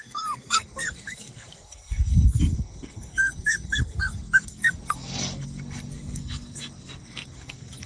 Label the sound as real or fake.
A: fake